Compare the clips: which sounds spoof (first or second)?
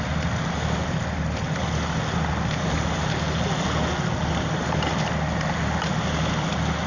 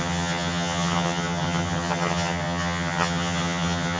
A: second